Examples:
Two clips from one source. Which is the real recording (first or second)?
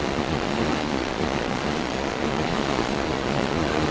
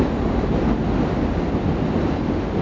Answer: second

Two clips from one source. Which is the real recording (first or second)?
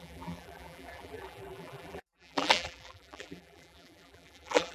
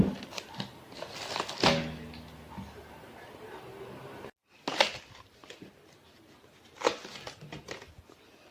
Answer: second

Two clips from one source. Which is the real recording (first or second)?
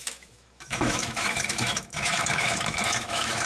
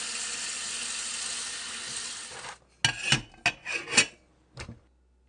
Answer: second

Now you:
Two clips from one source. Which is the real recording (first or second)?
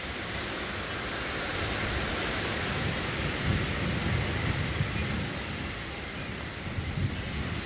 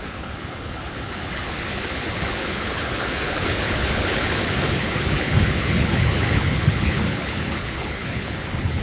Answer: first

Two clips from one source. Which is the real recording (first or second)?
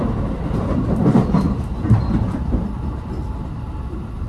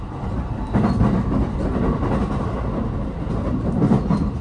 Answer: second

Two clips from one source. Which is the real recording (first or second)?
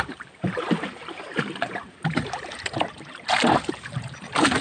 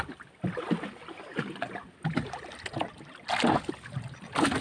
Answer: second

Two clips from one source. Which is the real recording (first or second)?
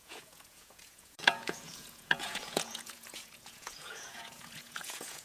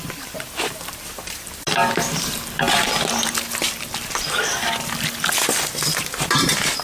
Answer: second